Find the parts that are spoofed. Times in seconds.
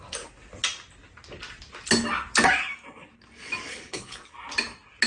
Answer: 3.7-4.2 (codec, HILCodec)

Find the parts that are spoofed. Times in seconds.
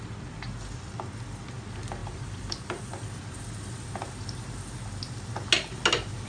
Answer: 2.0-2.8 (vocoder, BigVGAN v2)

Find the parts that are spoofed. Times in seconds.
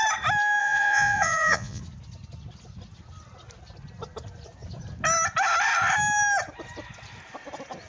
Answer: 0.6-1.8 (vocoder, Vocos)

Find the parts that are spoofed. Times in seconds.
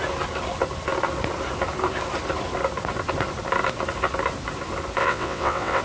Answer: 5.0-5.8 (vocoder, WaveNeXt)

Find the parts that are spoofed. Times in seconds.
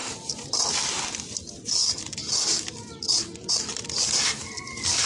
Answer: none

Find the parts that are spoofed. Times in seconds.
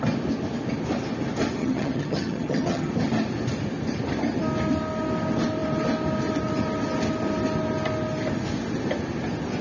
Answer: 1.6-2.9 (vocoder, HiFi-GAN)